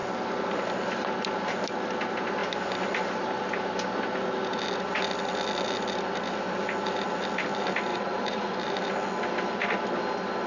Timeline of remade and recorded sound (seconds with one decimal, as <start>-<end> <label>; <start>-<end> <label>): 0.0-7.9 recorded; 7.9-8.6 remade; 8.6-10.5 recorded